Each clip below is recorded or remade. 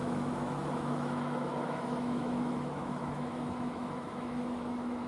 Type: remade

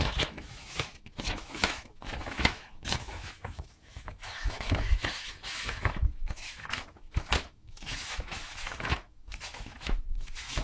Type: remade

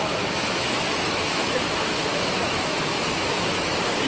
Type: remade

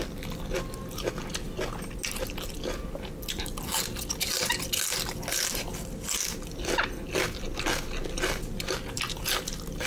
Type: recorded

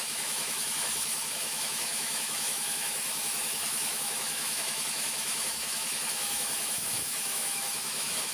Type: remade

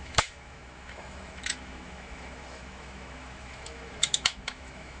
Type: remade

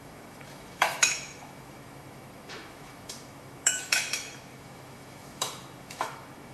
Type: remade